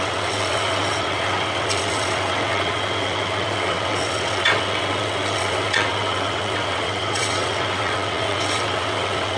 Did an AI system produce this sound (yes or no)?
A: yes